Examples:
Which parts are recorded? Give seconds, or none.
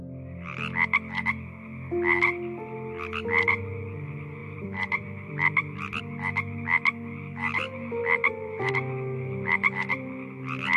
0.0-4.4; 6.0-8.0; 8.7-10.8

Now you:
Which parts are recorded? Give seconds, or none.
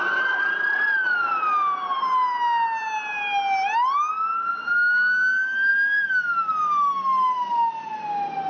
0.0-8.5